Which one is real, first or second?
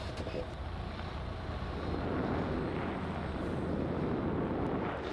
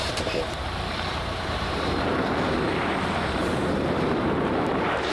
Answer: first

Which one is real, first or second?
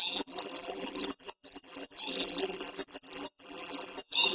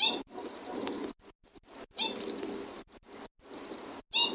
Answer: second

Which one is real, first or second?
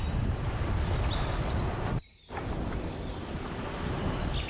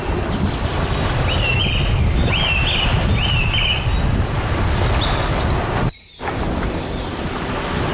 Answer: second